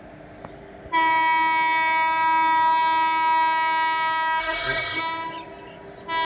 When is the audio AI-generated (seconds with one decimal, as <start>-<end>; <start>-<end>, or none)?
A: 4.4-5.0